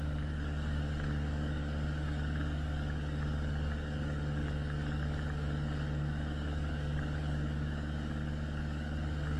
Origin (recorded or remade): remade